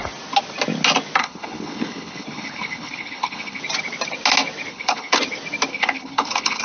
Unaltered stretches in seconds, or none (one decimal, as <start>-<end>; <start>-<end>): 0.0-1.2; 3.6-4.7; 5.2-5.7